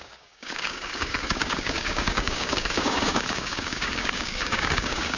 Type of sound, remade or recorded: remade